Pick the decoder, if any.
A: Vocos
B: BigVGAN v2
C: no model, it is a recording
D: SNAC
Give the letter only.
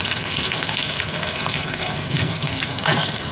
D